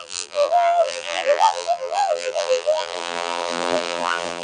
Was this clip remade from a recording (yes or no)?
yes